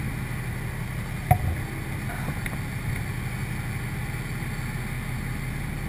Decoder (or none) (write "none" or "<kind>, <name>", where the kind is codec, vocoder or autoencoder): none